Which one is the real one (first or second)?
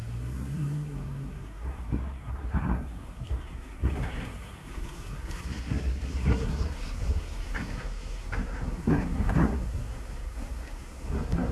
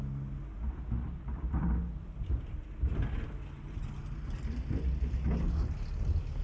second